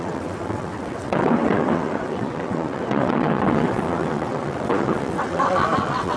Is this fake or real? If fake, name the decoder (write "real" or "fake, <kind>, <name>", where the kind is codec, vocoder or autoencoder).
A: fake, vocoder, WaveNeXt